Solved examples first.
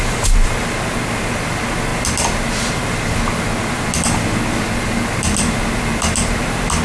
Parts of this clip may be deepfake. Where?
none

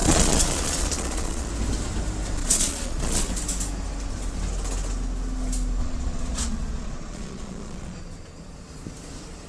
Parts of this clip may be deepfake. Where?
0.0-1.5; 2.4-3.3; 5.8-8.0

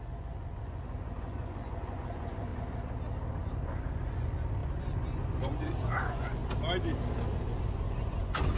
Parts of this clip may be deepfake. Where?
0.0-2.5; 3.3-6.4; 7.3-8.6

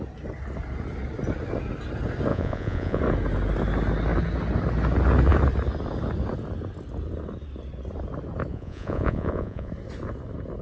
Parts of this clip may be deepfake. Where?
2.3-3.0; 8.5-9.7

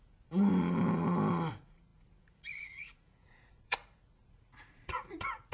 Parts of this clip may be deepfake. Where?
0.0-0.5; 1.5-5.5

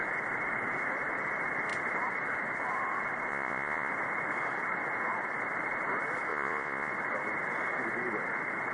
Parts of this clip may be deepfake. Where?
3.3-3.9; 6.3-6.9